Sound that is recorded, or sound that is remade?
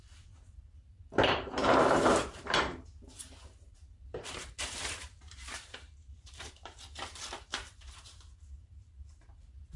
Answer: remade